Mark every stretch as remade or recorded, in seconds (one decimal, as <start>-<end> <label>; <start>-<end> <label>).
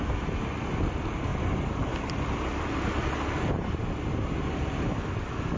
0.0-5.6 recorded